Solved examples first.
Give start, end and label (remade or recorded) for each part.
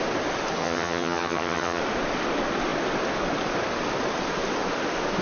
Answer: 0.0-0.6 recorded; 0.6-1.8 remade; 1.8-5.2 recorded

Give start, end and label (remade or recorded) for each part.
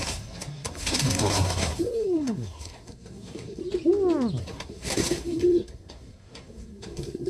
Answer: 0.0-3.6 remade; 3.6-4.4 recorded; 4.4-7.3 remade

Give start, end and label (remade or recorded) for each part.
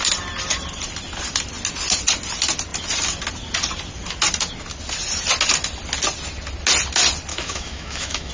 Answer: 0.0-7.3 recorded; 7.3-8.3 remade